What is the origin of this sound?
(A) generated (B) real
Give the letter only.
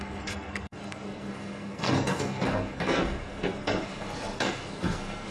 A